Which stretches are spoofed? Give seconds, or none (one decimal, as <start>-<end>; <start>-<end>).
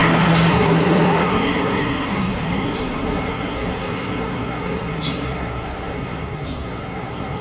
0.0-7.4